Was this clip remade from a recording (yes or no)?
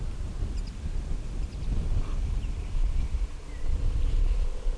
no